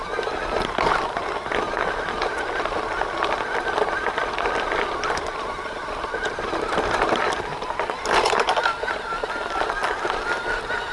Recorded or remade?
recorded